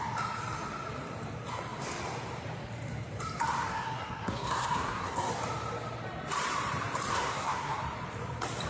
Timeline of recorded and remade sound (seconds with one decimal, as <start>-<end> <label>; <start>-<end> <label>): 0.0-3.7 recorded; 3.7-5.3 remade; 5.3-7.1 recorded; 7.1-7.8 remade; 7.8-8.7 recorded